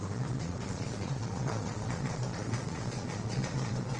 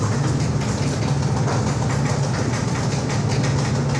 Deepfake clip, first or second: first